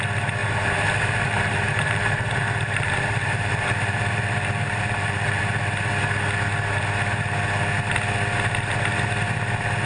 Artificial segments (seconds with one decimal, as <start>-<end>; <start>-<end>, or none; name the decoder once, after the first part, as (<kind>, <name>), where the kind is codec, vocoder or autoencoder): 0.4-5.4 (vocoder, BigVGAN v2)

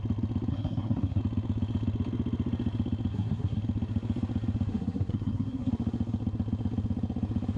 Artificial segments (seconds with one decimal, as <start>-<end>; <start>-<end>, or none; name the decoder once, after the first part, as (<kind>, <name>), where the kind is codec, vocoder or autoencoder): 0.5-1.2 (codec, SNAC); 3.1-3.6; 4.7-5.7

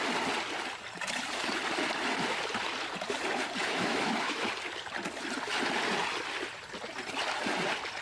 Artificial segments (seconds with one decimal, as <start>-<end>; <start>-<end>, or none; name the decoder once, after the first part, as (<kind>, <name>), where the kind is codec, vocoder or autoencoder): 3.6-4.5 (autoencoder, DAC-VAE)

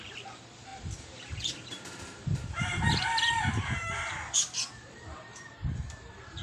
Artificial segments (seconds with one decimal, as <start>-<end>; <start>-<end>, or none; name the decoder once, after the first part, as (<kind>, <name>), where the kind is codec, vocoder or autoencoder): 0.0-6.4 (vocoder, BigVGAN v2)

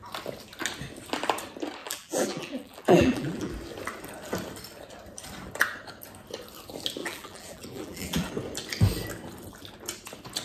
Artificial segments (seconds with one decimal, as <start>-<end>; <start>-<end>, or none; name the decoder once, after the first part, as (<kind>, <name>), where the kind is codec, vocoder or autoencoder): 1.8-3.5 (vocoder, BigVGAN v2); 7.0-8.3

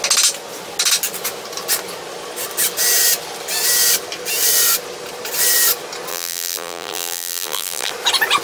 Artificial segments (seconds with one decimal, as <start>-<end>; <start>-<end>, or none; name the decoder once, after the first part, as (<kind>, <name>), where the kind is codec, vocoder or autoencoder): 6.1-7.9 (vocoder, BigVGAN v2)

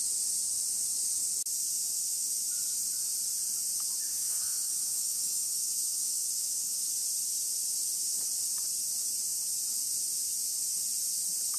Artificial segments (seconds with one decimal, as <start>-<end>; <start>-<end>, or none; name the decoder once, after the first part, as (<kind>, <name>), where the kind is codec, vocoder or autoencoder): 4.1-6.9 (autoencoder, DAC-VAE)